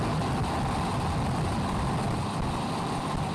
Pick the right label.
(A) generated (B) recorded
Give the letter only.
B